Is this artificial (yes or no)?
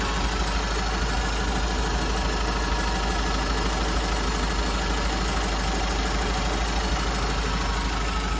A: no